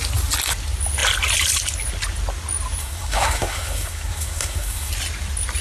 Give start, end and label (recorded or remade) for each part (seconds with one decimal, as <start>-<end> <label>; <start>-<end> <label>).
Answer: 0.0-2.8 recorded; 2.8-4.9 remade; 4.9-5.6 recorded